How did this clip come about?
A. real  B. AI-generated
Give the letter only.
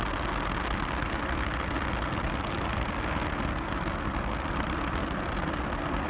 A